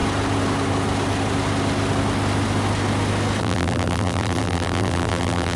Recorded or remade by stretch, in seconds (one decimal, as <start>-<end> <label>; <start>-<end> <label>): 0.0-3.4 recorded; 3.4-5.6 remade